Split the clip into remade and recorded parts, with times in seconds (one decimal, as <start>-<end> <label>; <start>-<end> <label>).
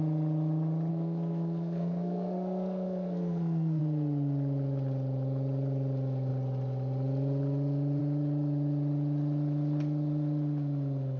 0.0-0.9 recorded; 0.9-3.8 remade; 3.8-11.2 recorded